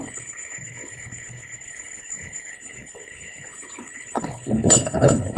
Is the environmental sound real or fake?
fake